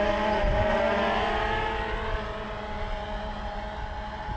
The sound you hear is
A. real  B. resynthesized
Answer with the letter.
A